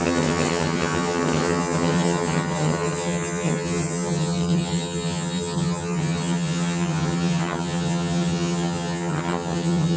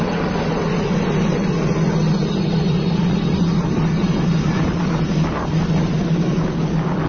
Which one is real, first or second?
second